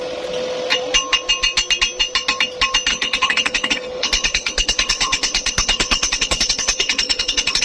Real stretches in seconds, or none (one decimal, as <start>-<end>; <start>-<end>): 0.0-2.9